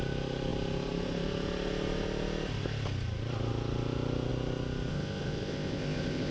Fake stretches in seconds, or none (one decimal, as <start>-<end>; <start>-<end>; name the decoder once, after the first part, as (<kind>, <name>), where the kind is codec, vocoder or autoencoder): 4.9-6.3 (codec, ZipCodec)